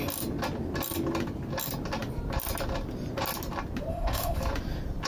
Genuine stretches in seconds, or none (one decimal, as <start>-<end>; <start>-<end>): 0.0-3.9; 4.4-5.1